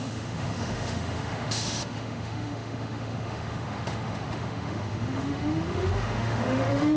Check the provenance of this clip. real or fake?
fake